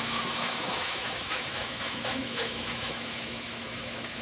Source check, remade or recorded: remade